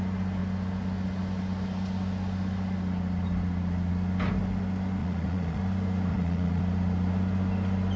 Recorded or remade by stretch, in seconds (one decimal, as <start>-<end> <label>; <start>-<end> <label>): 0.0-5.0 recorded; 5.0-5.6 remade; 5.6-6.1 recorded; 6.1-6.6 remade; 6.6-8.0 recorded